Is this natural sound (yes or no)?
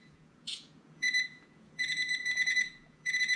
no